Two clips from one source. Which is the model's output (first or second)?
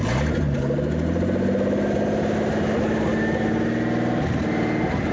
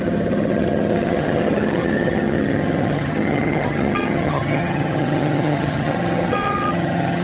second